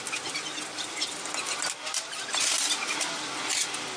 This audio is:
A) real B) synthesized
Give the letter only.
A